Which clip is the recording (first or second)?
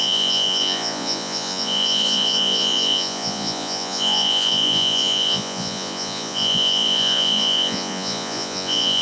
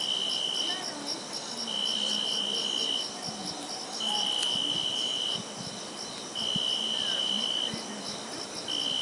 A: second